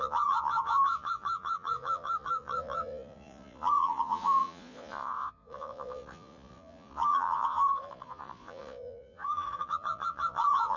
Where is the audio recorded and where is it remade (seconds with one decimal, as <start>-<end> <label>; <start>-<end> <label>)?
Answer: 0.0-10.8 remade